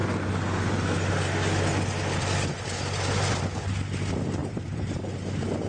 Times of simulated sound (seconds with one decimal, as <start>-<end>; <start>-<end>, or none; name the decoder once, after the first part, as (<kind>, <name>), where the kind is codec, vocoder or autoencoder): 4.4-5.0 (vocoder, BigVGAN v2)